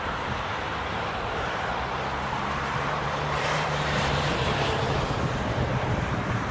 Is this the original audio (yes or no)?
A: no